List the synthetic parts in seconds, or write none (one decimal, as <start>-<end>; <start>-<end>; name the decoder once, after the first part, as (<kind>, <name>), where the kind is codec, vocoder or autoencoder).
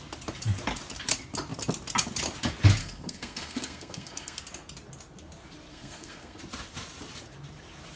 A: 2.8-4.4 (codec, SNAC); 5.7-6.4